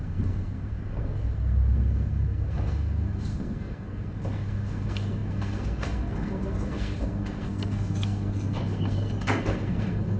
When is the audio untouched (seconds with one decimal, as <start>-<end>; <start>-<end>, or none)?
none